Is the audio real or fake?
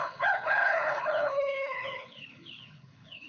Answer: fake